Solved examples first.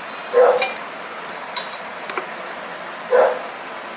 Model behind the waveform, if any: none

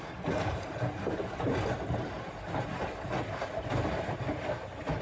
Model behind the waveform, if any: none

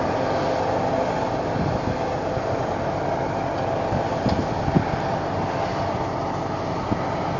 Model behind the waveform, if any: none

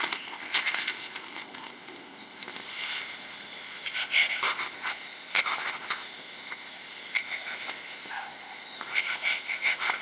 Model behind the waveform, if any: codec, ZipCodec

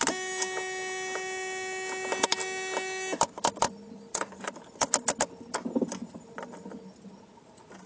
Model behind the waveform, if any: none